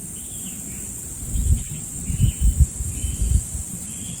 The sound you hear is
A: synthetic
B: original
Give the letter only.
B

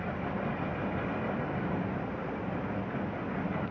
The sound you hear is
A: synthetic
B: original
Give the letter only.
B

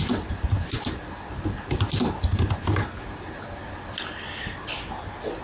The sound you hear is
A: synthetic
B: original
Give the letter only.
B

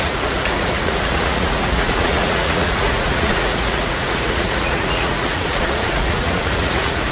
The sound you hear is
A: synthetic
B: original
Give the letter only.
A